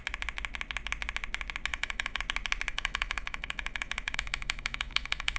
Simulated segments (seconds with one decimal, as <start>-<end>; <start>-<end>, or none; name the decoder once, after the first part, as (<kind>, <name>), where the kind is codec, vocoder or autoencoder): 1.7-2.2 (autoencoder, DAC-VAE); 2.7-5.4